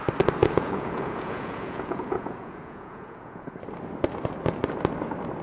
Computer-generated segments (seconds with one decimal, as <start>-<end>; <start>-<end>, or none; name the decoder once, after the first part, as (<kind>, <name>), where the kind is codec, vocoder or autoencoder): 0.4-3.6 (vocoder, Vocos)